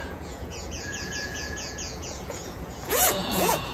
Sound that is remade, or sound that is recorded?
remade